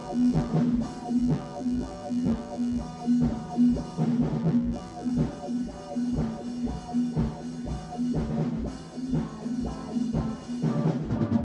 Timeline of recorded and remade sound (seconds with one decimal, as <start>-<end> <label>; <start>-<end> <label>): 0.0-0.5 remade; 0.5-1.2 recorded; 1.2-2.8 remade; 2.8-4.4 recorded; 4.4-5.1 remade; 5.1-11.4 recorded